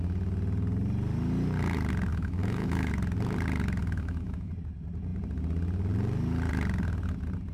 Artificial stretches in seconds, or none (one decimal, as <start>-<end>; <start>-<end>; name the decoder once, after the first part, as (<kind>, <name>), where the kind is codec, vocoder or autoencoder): 2.1-2.9 (autoencoder, DAC-VAE); 3.8-4.5